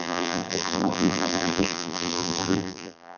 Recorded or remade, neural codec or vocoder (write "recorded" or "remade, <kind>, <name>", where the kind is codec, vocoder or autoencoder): remade, vocoder, BigVGAN v2